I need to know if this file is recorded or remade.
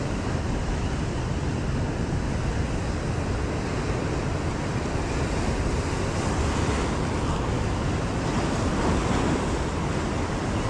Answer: recorded